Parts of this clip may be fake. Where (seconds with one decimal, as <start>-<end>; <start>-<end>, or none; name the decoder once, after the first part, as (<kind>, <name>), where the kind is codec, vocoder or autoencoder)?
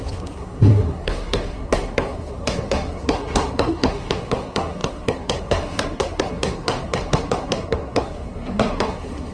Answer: 0.0-9.3 (codec, SNAC)